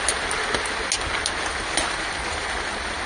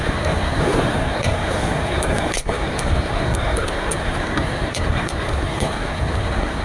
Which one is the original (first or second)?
first